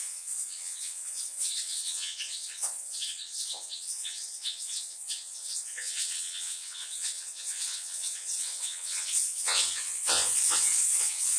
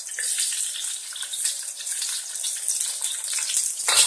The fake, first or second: first